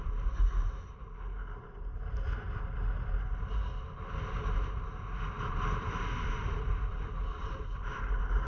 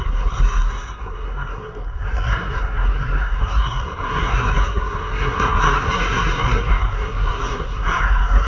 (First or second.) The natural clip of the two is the first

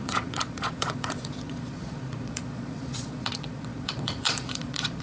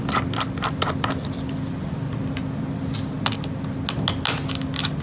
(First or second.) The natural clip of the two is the second